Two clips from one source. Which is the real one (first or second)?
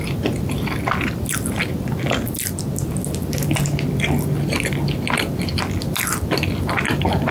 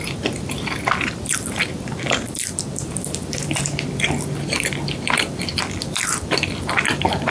first